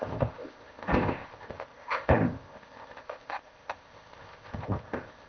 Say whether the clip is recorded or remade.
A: remade